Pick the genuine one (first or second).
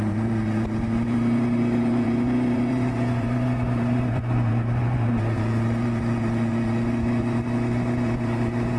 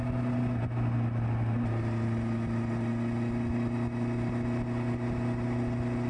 second